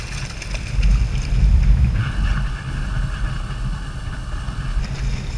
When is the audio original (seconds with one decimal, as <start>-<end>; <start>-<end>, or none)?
0.0-2.0; 4.8-5.4